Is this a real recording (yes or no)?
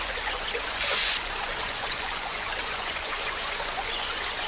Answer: no